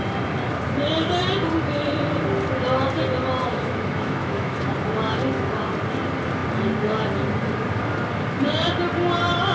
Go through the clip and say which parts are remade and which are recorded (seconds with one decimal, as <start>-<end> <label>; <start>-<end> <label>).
0.0-3.5 recorded; 3.5-4.7 remade; 4.7-9.5 recorded